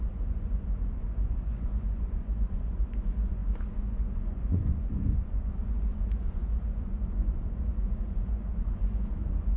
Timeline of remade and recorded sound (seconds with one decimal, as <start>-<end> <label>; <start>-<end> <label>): 0.0-9.6 remade